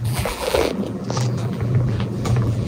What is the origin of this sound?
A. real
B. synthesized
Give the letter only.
B